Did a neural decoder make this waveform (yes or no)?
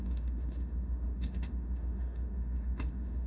yes